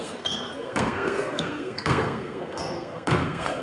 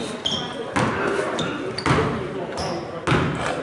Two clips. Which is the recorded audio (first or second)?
second